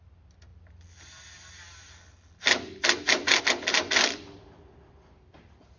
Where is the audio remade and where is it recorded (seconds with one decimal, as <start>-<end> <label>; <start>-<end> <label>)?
0.0-5.8 recorded